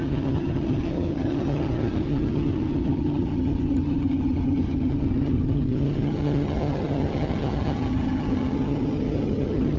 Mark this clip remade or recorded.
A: remade